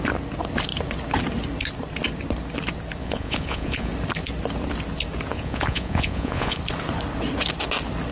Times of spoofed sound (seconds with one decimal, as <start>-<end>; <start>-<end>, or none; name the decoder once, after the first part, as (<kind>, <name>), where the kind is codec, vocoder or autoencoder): 3.0-3.9 (vocoder, Vocos); 5.3-6.6